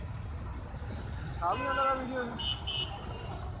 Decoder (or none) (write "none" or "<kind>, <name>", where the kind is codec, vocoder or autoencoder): none